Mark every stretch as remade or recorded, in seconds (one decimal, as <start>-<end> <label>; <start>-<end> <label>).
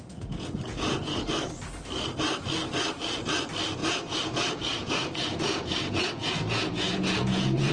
0.0-1.2 remade; 1.2-3.8 recorded; 3.8-7.7 remade